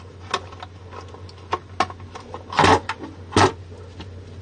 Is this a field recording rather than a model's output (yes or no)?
yes